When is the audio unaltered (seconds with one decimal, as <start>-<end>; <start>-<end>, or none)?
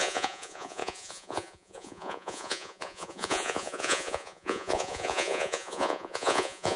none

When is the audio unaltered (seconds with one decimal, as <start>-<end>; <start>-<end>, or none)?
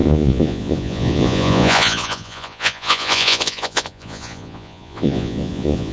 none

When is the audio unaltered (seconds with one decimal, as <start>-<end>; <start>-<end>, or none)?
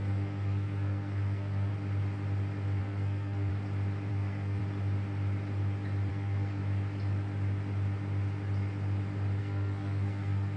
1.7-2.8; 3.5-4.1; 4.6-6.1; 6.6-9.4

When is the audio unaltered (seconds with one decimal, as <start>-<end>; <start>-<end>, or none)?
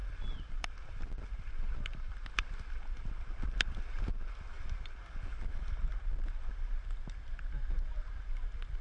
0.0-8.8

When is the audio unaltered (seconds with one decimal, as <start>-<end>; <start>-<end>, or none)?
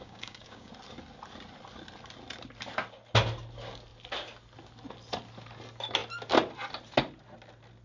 0.7-7.8